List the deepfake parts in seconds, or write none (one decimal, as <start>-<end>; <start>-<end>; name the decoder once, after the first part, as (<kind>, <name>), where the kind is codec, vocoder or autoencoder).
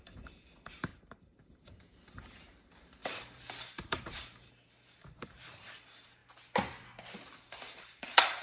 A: 0.0-6.2 (vocoder, BigVGAN v2); 7.2-8.4